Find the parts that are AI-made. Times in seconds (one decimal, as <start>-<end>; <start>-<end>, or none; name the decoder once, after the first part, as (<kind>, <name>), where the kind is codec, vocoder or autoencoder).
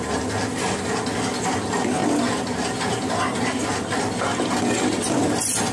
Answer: none